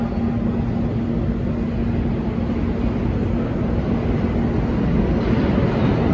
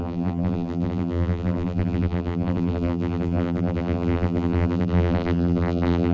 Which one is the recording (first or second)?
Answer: first